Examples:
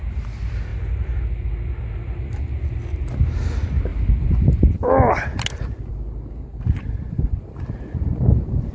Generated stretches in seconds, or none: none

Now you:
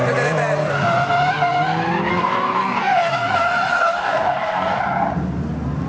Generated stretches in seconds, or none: 2.1-3.1; 3.7-4.8

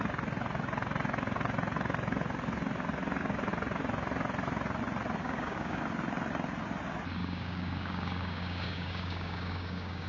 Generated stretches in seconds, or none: 5.2-5.8; 7.2-10.1

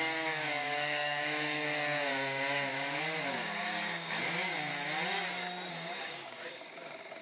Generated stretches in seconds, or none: 0.0-4.7; 5.7-7.2